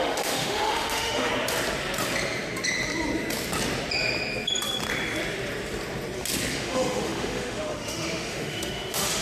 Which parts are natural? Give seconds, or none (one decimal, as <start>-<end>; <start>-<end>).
1.3-6.5